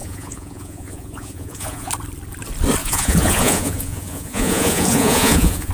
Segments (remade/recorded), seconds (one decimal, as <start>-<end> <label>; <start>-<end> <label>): 0.0-1.9 remade; 1.9-2.8 recorded; 2.8-5.7 remade